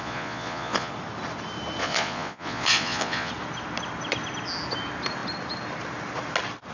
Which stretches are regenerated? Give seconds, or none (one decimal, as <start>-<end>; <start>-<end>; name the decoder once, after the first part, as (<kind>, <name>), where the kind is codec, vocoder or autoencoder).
0.0-0.9 (vocoder, Vocos); 1.8-3.3